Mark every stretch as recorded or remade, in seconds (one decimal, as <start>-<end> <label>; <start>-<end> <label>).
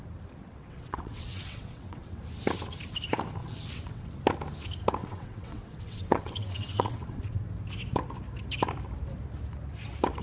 0.0-0.5 recorded; 0.5-2.2 remade; 2.2-3.4 recorded; 3.4-4.1 remade; 4.1-5.0 recorded; 5.0-7.4 remade; 7.4-10.2 recorded